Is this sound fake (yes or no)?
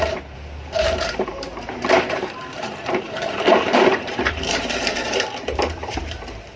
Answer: yes